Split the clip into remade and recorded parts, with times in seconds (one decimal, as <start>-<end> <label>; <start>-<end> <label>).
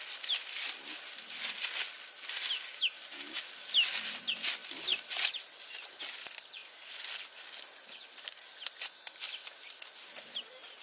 0.0-10.8 recorded